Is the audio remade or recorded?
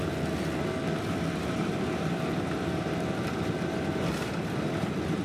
recorded